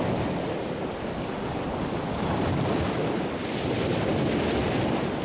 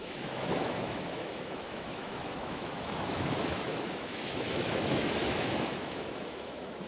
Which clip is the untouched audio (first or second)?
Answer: first